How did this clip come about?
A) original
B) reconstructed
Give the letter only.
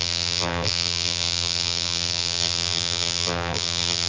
B